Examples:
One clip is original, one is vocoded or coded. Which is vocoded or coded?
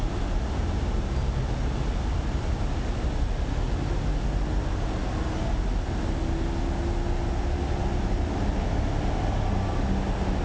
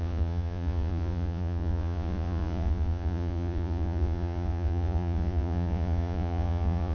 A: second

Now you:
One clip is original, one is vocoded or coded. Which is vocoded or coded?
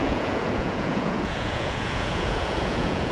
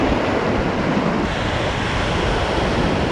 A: first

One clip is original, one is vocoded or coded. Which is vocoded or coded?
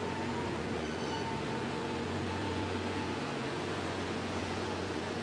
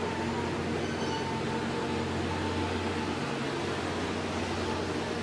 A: first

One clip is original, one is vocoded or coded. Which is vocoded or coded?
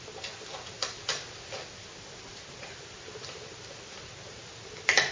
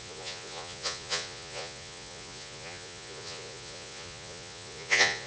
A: second